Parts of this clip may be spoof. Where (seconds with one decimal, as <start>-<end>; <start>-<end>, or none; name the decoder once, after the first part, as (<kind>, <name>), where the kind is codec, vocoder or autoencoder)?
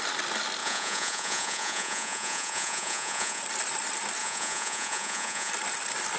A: 0.6-3.4 (vocoder, Vocos); 4.2-5.5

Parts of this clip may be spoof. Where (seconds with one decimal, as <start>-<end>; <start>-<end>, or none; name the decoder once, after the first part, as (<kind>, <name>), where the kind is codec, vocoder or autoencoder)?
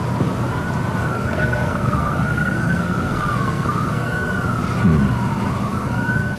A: 1.0-4.3 (codec, SNAC); 5.7-6.4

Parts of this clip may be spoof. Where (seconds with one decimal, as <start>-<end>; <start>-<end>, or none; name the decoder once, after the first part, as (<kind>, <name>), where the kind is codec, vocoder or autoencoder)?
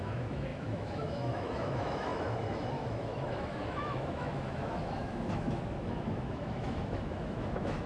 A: 0.0-7.9 (autoencoder, DAC-VAE)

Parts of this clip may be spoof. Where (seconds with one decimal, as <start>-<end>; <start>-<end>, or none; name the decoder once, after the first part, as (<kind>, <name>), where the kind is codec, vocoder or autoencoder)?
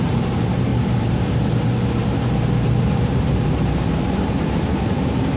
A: 0.0-0.7 (vocoder, BigVGAN v2); 2.8-5.4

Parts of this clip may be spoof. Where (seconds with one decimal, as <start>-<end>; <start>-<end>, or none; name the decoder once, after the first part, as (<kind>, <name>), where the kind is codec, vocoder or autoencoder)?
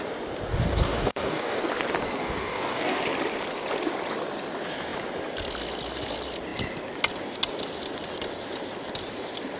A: 0.5-1.6 (codec, DAC); 2.2-3.0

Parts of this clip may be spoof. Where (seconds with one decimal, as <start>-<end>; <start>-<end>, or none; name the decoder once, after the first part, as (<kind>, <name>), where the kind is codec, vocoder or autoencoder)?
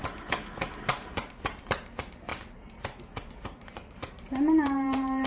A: 0.9-5.3 (vocoder, BigVGAN v2)